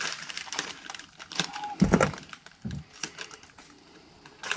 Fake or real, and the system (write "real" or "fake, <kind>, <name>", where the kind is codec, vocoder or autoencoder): fake, vocoder, BigVGAN v2